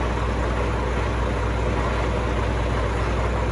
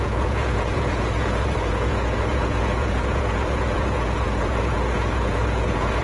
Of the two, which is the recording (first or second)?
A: first